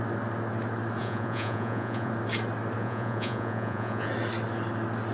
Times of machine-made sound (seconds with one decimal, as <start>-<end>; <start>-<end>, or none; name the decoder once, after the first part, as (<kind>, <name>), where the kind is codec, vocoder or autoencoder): 1.0-2.1 (vocoder, Vocos); 2.8-4.1